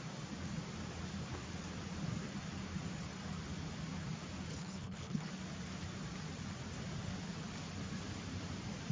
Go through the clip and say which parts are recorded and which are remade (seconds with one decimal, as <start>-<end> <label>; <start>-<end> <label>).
0.0-4.5 recorded; 4.5-5.3 remade; 5.3-8.9 recorded